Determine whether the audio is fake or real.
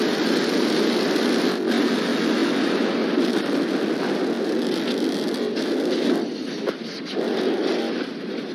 real